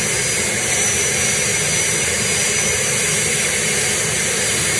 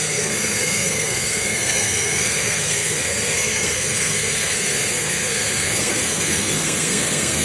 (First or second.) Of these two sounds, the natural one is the first